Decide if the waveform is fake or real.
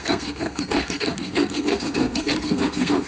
fake